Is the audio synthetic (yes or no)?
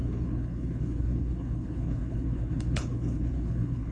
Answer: yes